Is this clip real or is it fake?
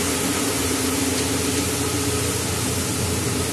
real